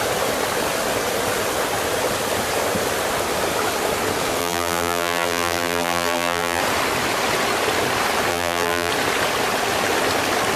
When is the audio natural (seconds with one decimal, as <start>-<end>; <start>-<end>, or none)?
0.0-4.4; 6.6-8.3; 8.9-10.6